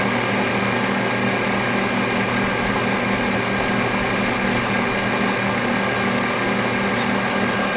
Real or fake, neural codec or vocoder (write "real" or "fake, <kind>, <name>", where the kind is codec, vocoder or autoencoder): real